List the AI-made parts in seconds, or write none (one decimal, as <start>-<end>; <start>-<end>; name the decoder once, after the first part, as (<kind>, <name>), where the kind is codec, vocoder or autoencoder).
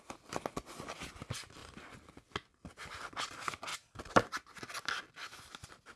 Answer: none